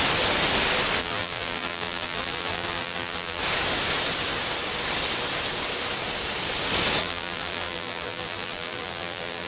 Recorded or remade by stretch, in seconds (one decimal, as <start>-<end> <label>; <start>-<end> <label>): 0.0-1.0 recorded; 1.0-3.4 remade; 3.4-7.0 recorded; 7.0-9.5 remade